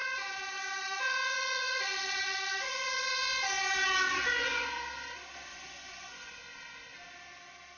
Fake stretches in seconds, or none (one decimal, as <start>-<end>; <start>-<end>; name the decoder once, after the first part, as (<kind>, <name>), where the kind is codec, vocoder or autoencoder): 0.0-4.7 (vocoder, Vocos); 5.5-6.3